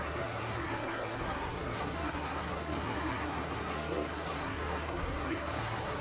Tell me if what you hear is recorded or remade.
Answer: remade